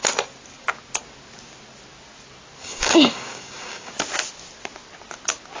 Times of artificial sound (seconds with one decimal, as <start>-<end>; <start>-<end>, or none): 2.6-3.9